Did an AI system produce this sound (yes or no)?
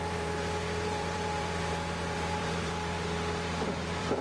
yes